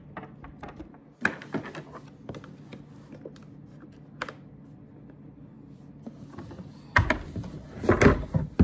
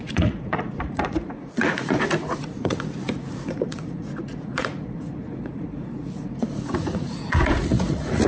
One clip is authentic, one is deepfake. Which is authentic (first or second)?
first